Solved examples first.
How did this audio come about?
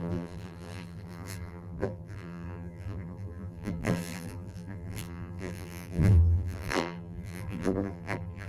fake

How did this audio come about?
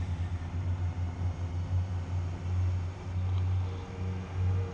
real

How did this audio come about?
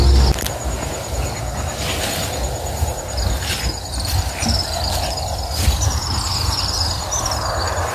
real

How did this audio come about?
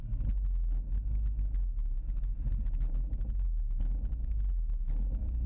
real